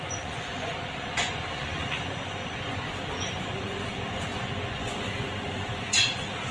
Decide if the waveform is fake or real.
fake